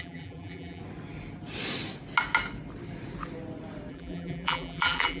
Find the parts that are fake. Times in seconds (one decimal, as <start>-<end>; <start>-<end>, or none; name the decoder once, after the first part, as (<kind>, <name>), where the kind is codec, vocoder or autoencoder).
0.0-0.8 (vocoder, BigVGAN v2); 3.9-5.2